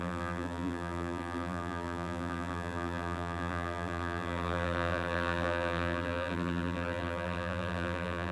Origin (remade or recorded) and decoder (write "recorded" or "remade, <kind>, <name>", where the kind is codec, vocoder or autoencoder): remade, vocoder, BigVGAN v2